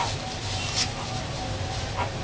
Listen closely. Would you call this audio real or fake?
real